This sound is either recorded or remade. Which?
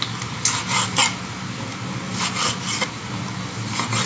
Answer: recorded